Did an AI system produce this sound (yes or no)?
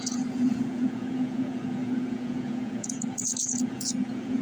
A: yes